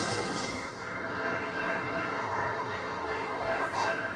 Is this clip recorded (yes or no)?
no